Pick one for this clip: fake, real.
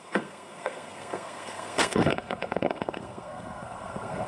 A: fake